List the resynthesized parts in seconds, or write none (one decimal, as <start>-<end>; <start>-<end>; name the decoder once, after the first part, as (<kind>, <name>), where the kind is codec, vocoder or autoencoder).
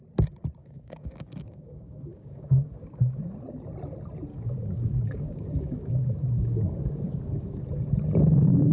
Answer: 0.6-3.2 (codec, DAC); 4.3-7.6